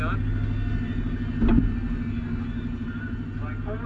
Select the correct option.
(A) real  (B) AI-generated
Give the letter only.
A